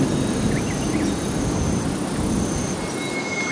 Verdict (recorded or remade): recorded